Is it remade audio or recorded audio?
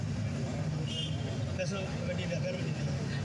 recorded